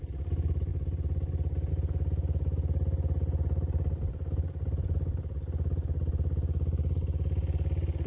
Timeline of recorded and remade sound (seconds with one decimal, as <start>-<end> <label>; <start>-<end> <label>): 0.0-8.1 recorded